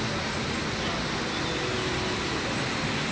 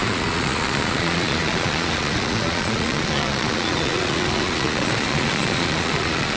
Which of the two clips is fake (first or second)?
second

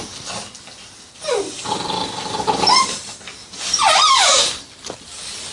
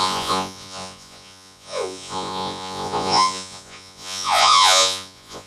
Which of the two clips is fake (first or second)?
second